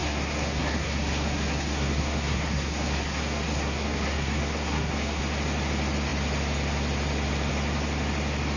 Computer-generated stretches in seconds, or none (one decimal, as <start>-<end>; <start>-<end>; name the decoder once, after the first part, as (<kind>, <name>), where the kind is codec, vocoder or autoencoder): 0.0-5.2 (codec, SNAC)